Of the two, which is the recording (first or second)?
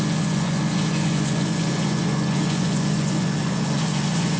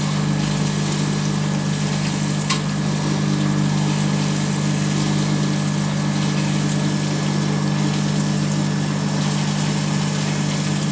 second